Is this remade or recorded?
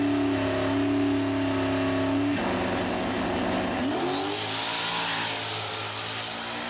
recorded